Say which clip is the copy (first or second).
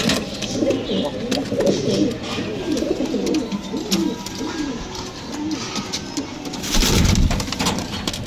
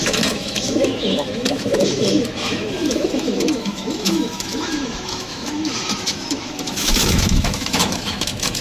second